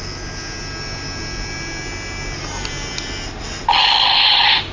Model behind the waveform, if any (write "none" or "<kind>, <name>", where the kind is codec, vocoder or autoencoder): none